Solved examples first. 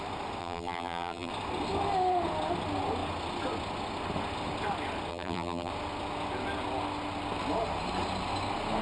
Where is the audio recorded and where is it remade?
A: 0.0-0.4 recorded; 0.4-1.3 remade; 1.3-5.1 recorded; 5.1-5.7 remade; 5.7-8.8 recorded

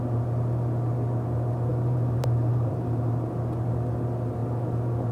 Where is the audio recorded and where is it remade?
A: 0.0-1.7 recorded; 1.7-3.1 remade; 3.1-5.1 recorded